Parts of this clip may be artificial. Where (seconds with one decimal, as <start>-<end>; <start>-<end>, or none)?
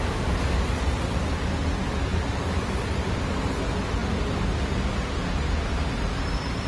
none